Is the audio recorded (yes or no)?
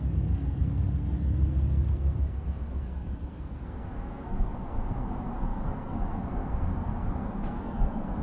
no